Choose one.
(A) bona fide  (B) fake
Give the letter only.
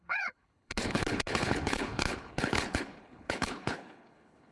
B